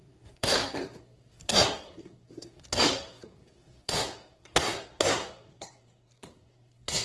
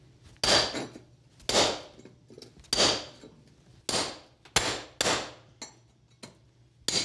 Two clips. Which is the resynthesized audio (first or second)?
first